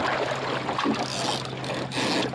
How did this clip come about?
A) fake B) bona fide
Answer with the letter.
B